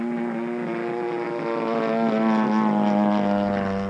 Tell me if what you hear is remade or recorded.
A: recorded